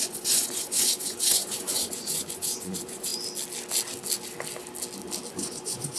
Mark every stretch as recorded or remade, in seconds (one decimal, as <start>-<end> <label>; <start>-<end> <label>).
0.0-3.1 remade; 3.1-5.3 recorded; 5.3-6.0 remade